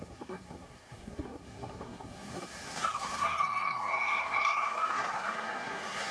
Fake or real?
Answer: fake